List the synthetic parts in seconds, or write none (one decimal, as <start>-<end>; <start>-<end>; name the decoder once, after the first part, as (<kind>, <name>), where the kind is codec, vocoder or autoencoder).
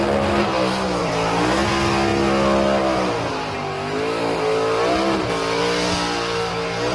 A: 1.0-1.7 (vocoder, BigVGAN v2)